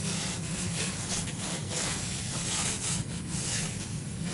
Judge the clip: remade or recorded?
remade